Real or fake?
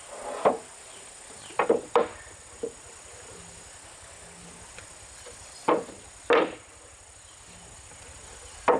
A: real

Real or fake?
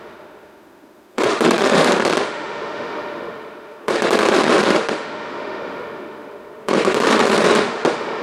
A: fake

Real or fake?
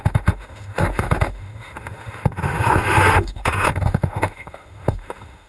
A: fake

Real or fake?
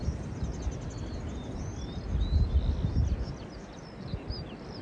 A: real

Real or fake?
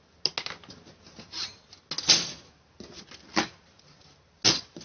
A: real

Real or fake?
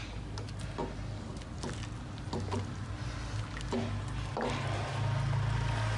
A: real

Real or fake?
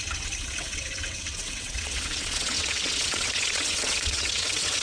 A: fake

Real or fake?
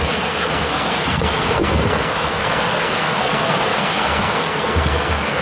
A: fake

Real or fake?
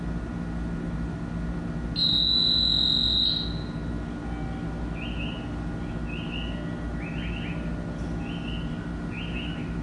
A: real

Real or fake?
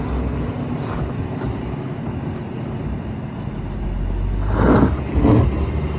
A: real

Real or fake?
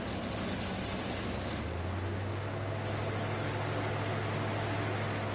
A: real